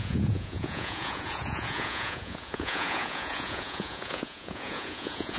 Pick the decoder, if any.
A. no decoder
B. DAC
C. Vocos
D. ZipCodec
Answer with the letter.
C